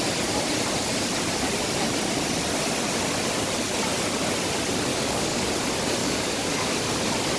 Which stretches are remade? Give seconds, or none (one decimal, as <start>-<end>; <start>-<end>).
4.9-5.5; 6.0-6.7